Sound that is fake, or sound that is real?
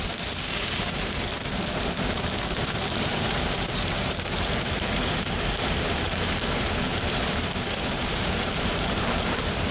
fake